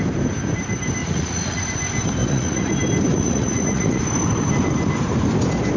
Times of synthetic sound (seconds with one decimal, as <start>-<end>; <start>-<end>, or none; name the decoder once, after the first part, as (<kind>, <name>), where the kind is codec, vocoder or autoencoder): 1.0-1.6 (vocoder, Vocos); 2.2-2.7; 3.1-4.0